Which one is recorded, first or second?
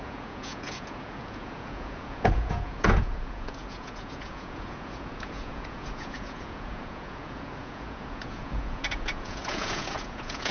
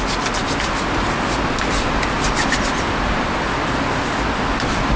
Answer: second